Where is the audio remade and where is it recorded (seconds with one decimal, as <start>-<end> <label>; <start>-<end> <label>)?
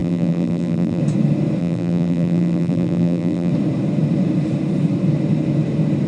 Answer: 0.0-1.0 remade; 1.0-1.6 recorded; 1.6-3.5 remade; 3.5-6.1 recorded